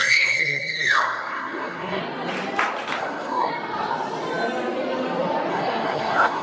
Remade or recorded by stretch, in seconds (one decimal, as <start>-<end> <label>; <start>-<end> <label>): 0.0-2.0 remade; 2.0-3.0 recorded; 3.0-3.5 remade; 3.5-5.5 recorded; 5.5-6.4 remade